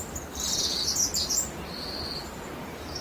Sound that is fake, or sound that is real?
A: real